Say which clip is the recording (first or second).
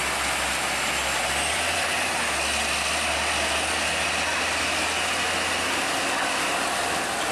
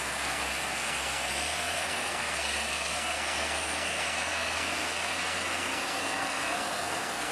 first